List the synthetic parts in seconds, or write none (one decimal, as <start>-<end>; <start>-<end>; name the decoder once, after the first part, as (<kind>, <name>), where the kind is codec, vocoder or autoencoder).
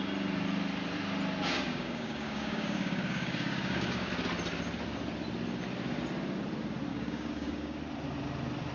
1.7-4.1 (codec, DAC); 6.9-7.8